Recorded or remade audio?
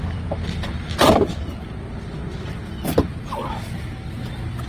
recorded